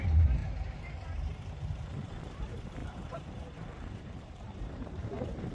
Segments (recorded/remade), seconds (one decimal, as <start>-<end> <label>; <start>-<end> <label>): 0.0-5.5 remade